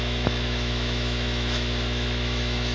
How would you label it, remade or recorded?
remade